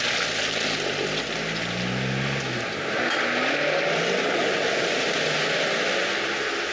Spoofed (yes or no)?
no